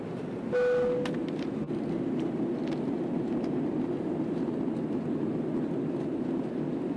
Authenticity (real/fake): real